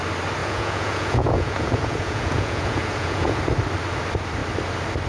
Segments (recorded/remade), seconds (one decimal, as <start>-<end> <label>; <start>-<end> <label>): 0.0-0.4 recorded; 0.4-3.4 remade; 3.4-5.1 recorded